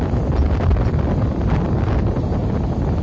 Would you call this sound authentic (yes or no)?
yes